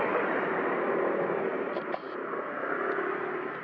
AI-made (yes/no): no